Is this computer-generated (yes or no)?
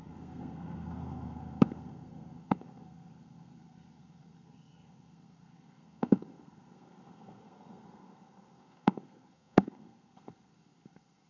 yes